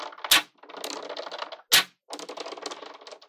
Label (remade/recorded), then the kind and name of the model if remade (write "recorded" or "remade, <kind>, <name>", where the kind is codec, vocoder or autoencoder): recorded